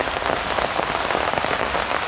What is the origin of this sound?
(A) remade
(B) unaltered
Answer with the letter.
B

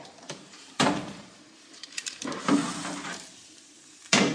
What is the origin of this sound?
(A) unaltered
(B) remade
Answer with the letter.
B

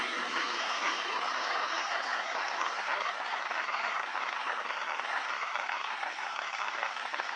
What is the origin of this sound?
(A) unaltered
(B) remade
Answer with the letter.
B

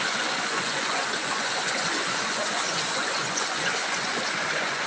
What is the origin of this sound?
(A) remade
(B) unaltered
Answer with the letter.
A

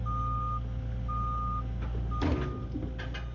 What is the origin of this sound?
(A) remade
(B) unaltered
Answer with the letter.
B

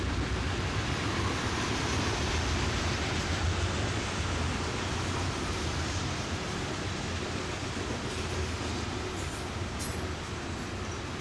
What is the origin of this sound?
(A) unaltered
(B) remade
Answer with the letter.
A